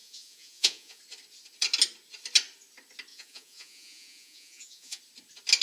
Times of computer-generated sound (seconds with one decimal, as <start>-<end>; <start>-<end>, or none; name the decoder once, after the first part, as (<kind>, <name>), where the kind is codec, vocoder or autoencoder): 0.0-1.0 (vocoder, Vocos); 3.1-5.0